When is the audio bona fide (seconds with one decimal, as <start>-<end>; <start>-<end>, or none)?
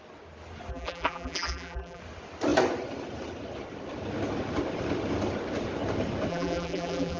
0.0-0.7; 2.0-6.3